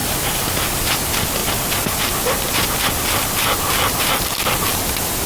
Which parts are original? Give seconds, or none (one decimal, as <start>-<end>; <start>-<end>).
0.0-5.3